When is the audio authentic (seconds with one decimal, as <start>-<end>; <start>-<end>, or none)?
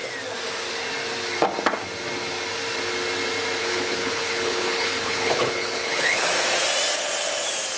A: 0.0-3.6; 6.3-7.8